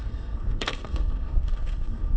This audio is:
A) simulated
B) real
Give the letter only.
A